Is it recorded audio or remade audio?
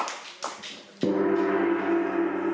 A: recorded